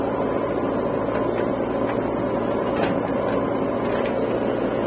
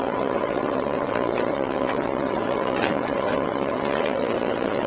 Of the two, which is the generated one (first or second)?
second